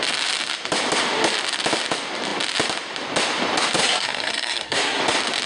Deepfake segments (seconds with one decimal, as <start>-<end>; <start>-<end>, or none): 3.8-5.0